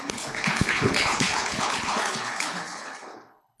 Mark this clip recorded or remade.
remade